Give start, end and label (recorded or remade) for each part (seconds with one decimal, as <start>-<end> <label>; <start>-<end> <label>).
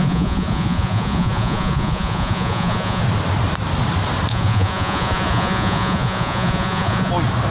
0.0-3.0 remade; 3.0-4.3 recorded; 4.3-7.1 remade; 7.1-7.5 recorded